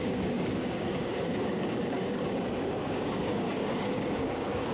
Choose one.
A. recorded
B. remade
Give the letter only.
B